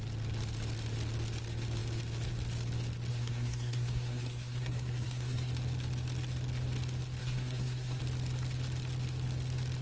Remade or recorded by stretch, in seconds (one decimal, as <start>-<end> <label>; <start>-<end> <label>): 0.0-3.1 recorded; 3.1-5.5 remade; 5.5-7.2 recorded; 7.2-8.0 remade; 8.0-9.8 recorded